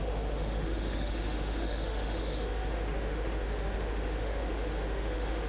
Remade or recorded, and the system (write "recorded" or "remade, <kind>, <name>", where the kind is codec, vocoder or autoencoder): remade, autoencoder, DAC-VAE